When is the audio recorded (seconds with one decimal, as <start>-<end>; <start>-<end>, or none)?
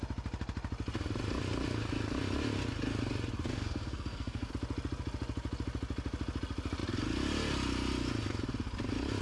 0.0-3.5; 4.5-9.2